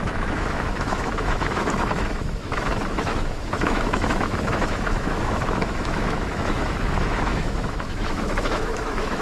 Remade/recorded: remade